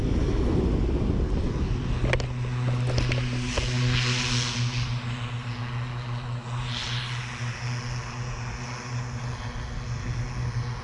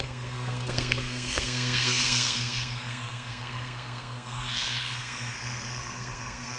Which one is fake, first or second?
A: second